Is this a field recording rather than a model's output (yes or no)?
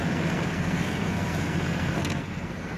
no